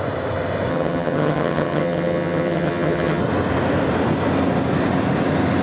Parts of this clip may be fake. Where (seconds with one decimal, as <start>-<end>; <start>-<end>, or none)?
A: 0.7-3.2